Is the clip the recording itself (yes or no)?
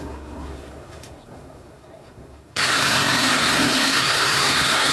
no